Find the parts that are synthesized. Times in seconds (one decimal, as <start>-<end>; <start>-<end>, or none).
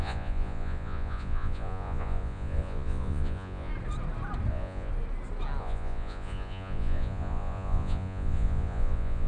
0.0-3.7; 4.5-4.9; 5.6-9.3